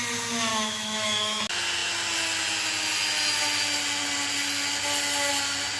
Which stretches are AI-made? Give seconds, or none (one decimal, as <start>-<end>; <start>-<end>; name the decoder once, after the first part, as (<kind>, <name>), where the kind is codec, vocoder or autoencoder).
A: 0.5-1.4 (autoencoder, DAC-VAE)